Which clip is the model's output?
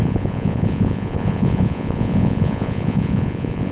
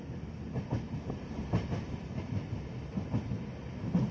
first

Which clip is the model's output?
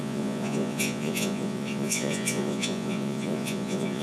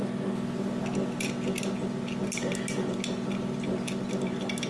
first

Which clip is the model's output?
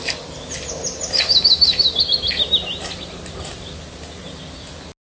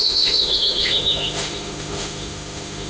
second